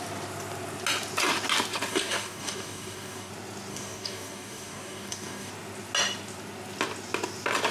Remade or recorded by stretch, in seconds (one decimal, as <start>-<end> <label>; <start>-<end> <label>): 0.0-1.9 recorded; 1.9-3.3 remade; 3.3-3.7 recorded; 3.7-5.5 remade; 5.5-7.7 recorded

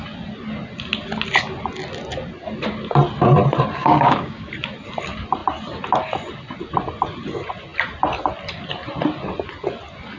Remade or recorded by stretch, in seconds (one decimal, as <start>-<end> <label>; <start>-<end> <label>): 0.0-3.8 recorded; 3.8-4.5 remade; 4.5-10.2 recorded